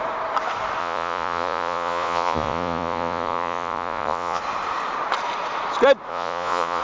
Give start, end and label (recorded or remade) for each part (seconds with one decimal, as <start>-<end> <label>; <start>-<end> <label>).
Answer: 0.0-0.8 recorded; 0.8-4.4 remade; 4.4-6.1 recorded; 6.1-6.8 remade